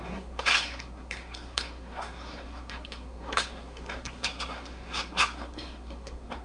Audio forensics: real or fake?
fake